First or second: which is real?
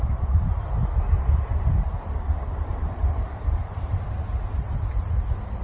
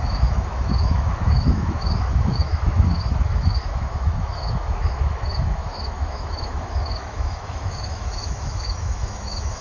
first